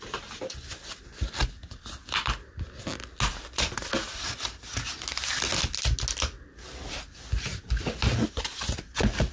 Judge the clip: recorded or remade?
recorded